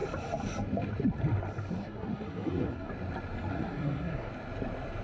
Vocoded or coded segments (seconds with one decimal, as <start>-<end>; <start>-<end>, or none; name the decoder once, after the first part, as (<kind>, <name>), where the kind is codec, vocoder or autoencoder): 1.8-2.9 (codec, SNAC); 3.5-4.3